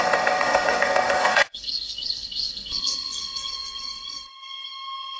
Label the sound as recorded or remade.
remade